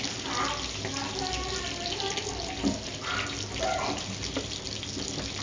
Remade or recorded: recorded